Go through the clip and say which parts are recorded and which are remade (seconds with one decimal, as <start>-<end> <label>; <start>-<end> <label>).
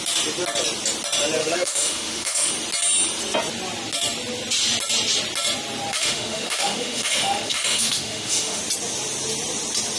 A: 0.0-1.4 recorded; 1.4-2.5 remade; 2.5-5.9 recorded; 5.9-8.6 remade; 8.6-10.0 recorded